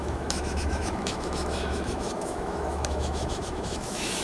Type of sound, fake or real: fake